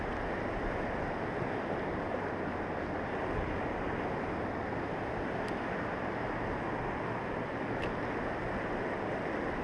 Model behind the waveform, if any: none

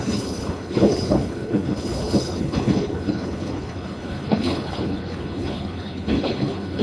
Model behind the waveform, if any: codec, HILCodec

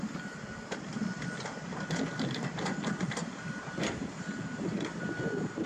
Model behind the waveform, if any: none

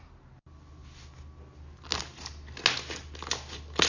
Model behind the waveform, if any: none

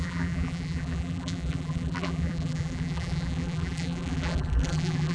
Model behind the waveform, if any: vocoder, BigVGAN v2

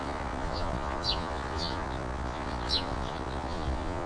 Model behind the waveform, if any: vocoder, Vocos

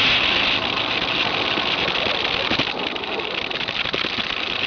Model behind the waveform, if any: none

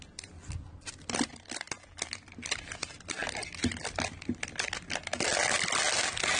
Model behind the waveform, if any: none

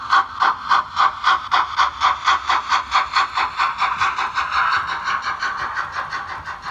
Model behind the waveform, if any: none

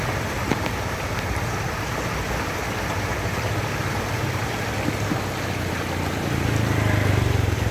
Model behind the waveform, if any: none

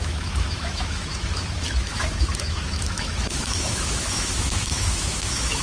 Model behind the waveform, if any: autoencoder, DAC-VAE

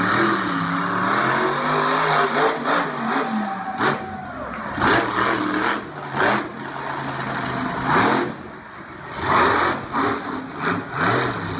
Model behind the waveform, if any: none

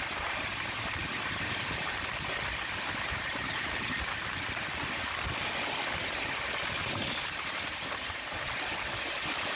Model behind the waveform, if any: vocoder, BigVGAN v2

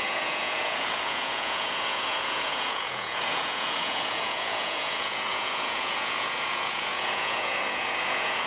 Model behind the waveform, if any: vocoder, Vocos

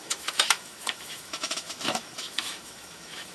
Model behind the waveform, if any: autoencoder, DAC-VAE